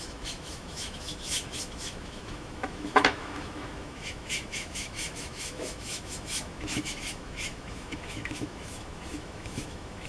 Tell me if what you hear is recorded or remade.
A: remade